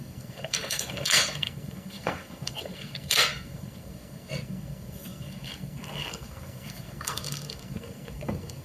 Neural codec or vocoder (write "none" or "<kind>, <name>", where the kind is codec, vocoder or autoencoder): codec, SNAC